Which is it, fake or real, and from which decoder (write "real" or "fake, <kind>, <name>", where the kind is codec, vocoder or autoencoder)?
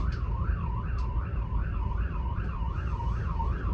fake, vocoder, BigVGAN v2